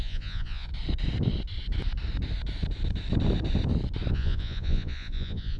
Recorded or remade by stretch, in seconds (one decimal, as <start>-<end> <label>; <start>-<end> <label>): 0.0-0.7 remade; 0.7-4.1 recorded; 4.1-5.6 remade